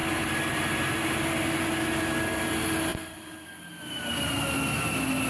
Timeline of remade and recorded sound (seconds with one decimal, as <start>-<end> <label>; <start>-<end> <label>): 0.0-5.3 recorded